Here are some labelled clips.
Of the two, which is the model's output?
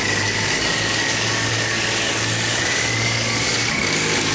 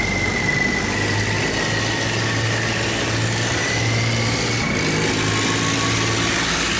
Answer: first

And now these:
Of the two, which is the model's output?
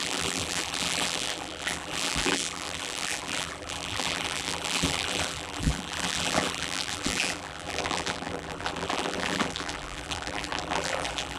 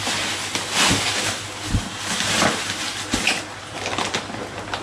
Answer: first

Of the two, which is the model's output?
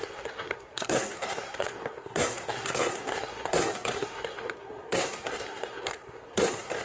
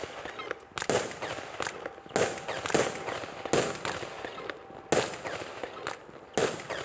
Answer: first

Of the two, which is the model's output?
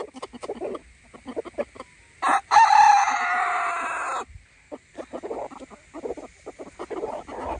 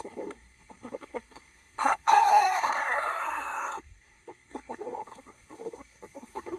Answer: second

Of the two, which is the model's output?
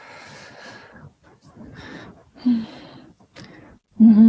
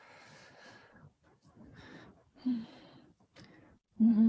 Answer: second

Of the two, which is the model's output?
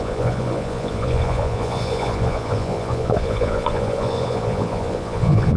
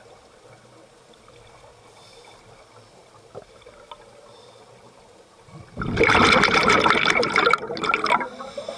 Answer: first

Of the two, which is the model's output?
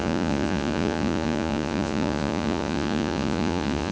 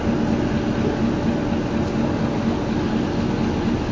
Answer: first